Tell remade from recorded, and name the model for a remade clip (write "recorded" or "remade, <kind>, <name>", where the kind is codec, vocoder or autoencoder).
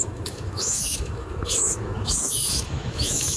remade, autoencoder, DAC-VAE